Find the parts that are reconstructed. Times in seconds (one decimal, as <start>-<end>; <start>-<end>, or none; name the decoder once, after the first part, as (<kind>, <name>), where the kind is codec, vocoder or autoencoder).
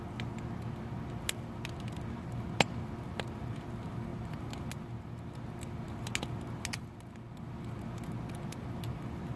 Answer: none